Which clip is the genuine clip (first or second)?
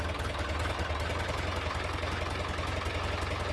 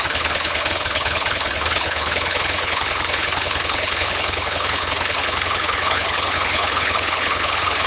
first